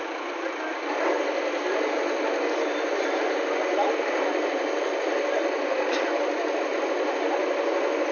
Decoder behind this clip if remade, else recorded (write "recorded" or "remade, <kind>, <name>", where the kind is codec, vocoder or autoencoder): recorded